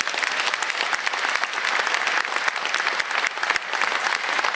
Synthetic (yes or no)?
no